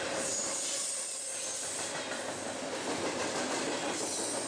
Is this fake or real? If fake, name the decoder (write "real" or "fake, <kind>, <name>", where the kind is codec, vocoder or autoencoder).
real